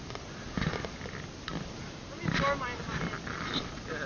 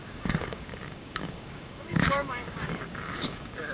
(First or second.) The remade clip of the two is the second